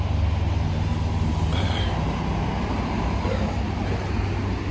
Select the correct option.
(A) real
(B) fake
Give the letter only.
A